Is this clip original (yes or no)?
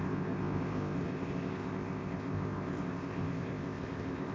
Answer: no